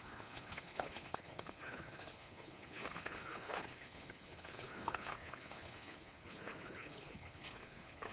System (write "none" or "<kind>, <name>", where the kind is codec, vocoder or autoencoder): codec, HILCodec